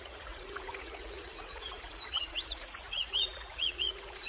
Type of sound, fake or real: fake